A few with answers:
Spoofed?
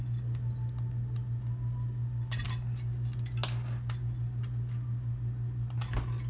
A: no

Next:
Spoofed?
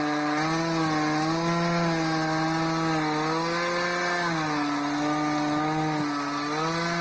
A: no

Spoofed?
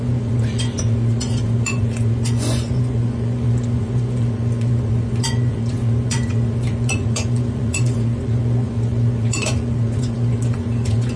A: yes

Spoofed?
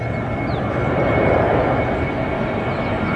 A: no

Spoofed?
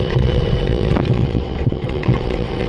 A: yes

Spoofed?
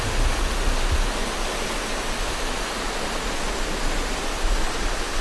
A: no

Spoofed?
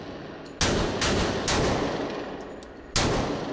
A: no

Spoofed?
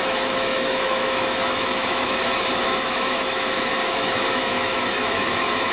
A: yes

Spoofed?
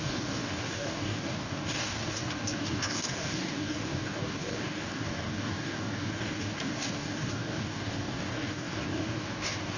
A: yes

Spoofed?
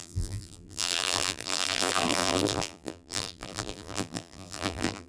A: yes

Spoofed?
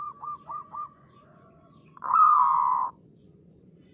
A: yes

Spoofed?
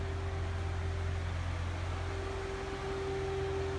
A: no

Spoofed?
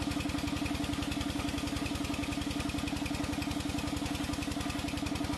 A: no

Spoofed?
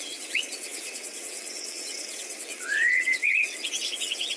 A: yes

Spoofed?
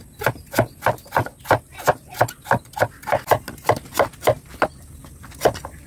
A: no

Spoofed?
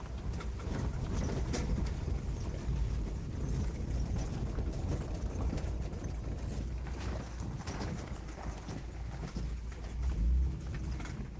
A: no